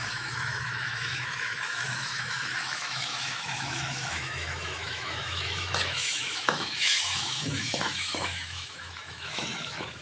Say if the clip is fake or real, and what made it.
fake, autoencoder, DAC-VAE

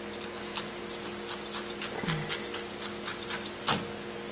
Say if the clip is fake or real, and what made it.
real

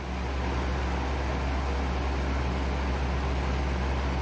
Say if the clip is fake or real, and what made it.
real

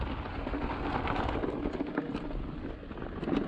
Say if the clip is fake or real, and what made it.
real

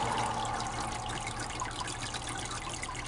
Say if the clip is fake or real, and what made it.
real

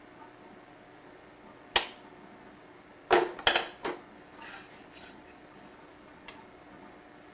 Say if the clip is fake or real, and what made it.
real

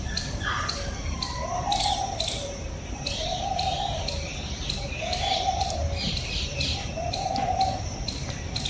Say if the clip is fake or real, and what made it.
fake, vocoder, BigVGAN v2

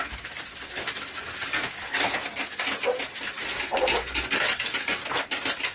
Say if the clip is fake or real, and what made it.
real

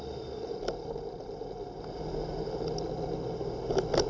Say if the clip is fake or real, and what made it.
real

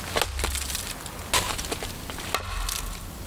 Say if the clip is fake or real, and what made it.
real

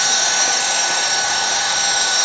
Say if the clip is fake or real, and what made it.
fake, codec, DAC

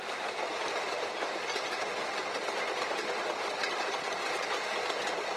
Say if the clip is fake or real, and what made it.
real